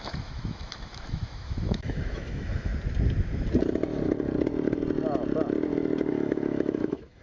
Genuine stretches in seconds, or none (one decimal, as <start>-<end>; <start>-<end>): 2.7-6.1